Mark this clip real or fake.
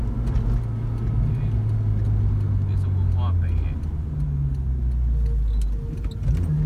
real